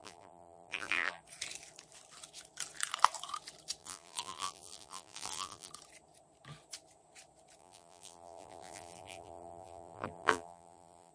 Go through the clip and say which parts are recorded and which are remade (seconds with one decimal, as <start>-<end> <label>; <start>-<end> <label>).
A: 0.0-1.2 remade; 1.2-3.8 recorded; 3.8-5.7 remade; 5.7-7.6 recorded; 7.6-11.1 remade